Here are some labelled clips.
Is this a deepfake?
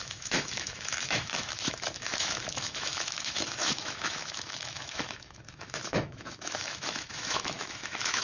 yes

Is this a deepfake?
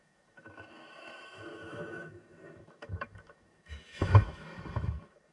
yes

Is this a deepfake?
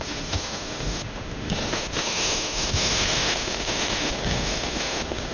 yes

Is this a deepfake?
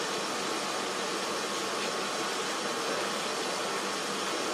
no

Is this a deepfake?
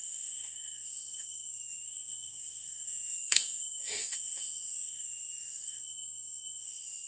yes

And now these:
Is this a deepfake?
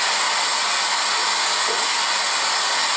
no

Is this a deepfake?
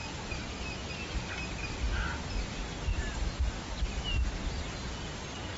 no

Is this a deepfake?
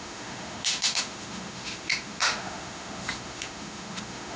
yes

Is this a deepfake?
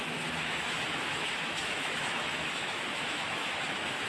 yes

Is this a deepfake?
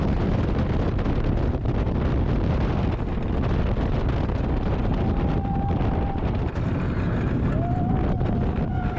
no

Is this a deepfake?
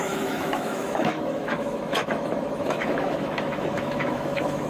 yes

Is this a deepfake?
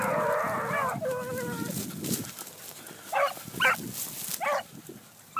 no